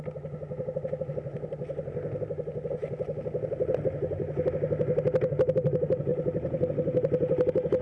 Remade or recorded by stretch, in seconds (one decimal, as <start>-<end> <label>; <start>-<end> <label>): 0.0-7.8 recorded